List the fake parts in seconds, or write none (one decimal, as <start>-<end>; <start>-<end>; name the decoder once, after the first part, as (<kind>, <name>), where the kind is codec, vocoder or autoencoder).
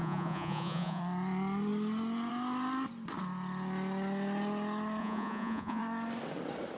0.0-1.0 (vocoder, Vocos); 5.0-5.8